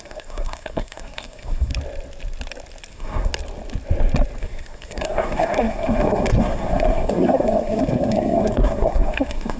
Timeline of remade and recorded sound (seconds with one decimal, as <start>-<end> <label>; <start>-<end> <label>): 0.0-1.7 remade; 1.7-2.9 recorded; 2.9-3.3 remade; 3.3-4.4 recorded; 4.4-9.6 remade